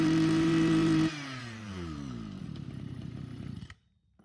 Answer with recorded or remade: remade